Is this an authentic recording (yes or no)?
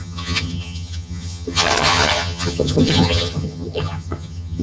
no